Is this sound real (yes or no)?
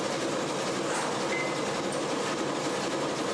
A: yes